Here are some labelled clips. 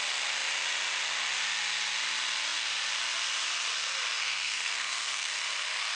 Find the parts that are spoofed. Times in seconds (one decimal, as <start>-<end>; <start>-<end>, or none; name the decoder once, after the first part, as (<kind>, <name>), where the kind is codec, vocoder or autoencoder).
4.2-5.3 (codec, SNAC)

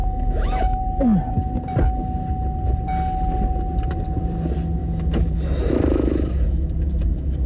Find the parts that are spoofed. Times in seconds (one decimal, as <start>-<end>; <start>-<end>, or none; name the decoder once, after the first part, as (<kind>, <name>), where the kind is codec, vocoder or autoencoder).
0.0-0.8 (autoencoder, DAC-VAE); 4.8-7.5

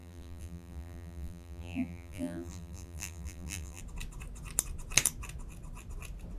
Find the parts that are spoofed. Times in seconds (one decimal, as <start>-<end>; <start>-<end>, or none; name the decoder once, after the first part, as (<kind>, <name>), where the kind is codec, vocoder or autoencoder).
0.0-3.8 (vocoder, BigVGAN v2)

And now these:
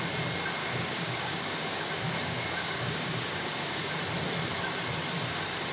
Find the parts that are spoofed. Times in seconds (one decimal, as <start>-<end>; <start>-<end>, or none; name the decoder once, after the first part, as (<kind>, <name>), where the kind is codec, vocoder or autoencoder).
0.6-4.0 (codec, DAC)